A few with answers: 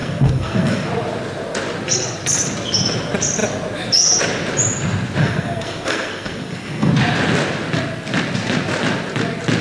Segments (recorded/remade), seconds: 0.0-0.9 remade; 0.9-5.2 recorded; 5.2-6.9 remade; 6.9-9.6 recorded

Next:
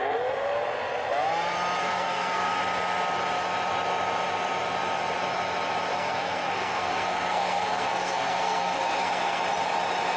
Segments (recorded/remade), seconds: 0.0-1.8 recorded; 1.8-2.6 remade; 2.6-5.9 recorded; 5.9-9.4 remade; 9.4-10.2 recorded

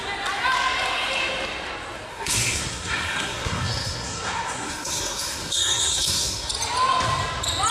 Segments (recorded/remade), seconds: 0.0-2.1 recorded; 2.1-6.5 remade; 6.5-7.7 recorded

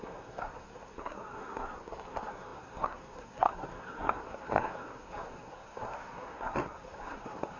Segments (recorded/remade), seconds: 0.0-7.6 remade

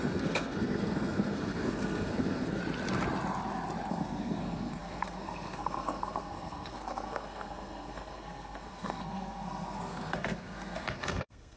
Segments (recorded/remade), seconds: 0.0-2.6 remade; 2.6-3.9 recorded; 3.9-11.6 remade

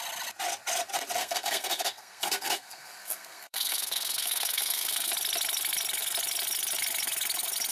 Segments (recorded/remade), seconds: 0.0-1.2 recorded; 1.2-5.1 remade; 5.1-7.7 recorded

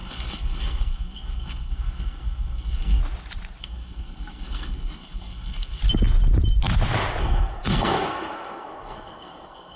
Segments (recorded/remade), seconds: 0.0-3.0 remade; 3.0-3.6 recorded; 3.6-5.8 remade; 5.8-7.2 recorded; 7.2-9.8 remade

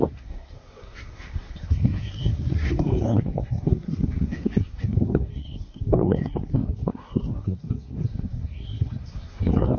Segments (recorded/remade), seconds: 0.0-9.8 remade